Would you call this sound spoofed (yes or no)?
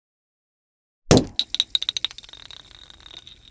no